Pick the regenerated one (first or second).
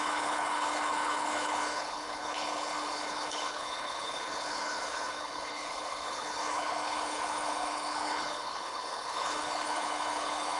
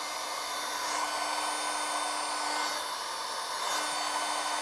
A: first